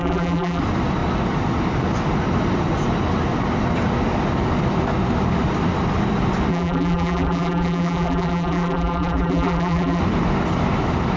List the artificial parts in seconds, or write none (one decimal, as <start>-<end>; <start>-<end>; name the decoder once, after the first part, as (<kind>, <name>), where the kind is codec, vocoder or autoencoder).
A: 0.0-0.6 (vocoder, BigVGAN v2); 6.5-10.0